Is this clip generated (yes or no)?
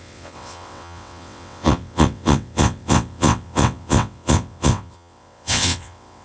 yes